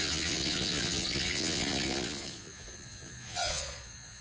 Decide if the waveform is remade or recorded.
remade